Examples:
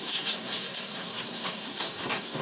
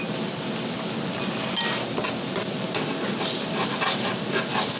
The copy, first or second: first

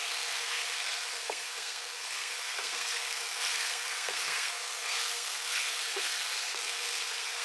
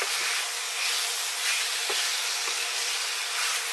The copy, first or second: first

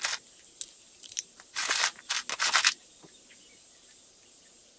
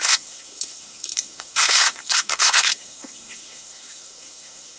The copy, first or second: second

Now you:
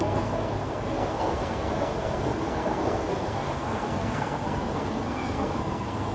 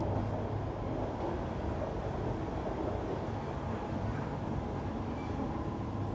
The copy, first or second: first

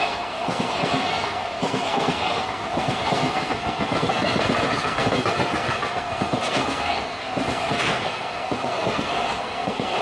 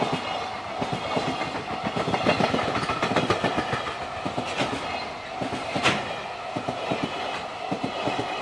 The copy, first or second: first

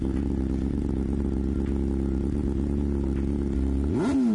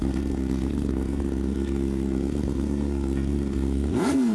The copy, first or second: second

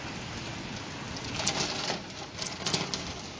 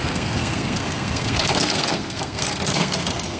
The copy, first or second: second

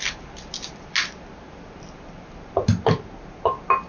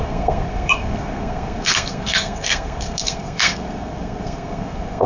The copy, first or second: second